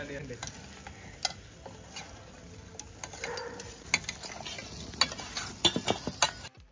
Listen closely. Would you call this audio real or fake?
real